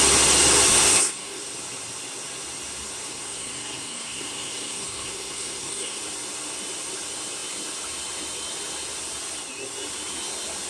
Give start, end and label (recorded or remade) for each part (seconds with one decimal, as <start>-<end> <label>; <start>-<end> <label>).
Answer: 0.0-0.7 recorded; 0.7-1.4 remade; 1.4-3.1 recorded; 3.1-6.0 remade; 6.0-10.7 recorded